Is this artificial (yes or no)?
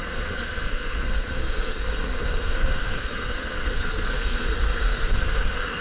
yes